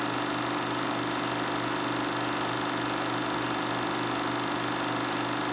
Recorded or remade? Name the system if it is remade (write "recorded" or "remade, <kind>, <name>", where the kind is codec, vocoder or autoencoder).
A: recorded